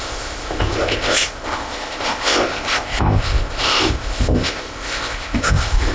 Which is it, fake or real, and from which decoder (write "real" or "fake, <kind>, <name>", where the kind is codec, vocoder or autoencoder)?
fake, codec, ZipCodec